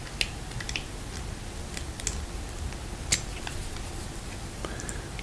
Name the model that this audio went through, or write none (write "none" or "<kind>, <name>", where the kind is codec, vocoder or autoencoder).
none